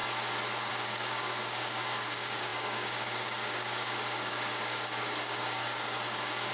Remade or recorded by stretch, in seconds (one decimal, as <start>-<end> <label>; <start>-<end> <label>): 0.0-0.7 recorded; 0.7-6.5 remade